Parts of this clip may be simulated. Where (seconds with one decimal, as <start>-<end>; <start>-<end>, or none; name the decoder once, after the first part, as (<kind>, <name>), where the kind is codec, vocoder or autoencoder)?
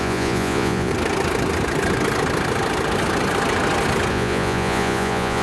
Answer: 0.0-0.9 (vocoder, Vocos); 4.1-5.4